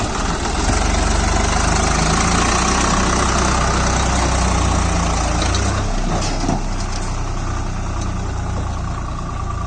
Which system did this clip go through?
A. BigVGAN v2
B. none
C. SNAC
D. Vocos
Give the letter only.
B